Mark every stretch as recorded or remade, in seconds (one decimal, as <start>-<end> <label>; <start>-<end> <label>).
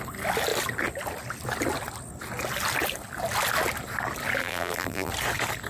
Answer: 0.0-4.4 recorded; 4.4-5.1 remade; 5.1-5.7 recorded